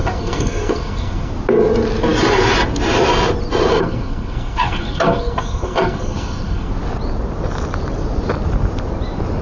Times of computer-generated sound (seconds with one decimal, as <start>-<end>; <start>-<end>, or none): 0.0-1.3; 3.7-6.7